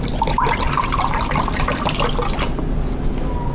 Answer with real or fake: real